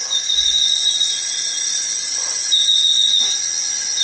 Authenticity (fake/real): real